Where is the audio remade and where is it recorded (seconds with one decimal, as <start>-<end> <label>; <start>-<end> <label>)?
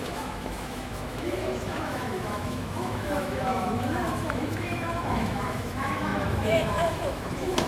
0.0-7.7 remade